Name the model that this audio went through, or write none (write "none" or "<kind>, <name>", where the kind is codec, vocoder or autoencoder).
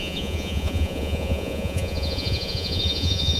vocoder, Vocos